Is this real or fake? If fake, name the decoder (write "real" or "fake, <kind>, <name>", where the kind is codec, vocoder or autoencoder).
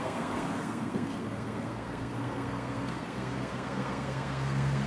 fake, codec, SNAC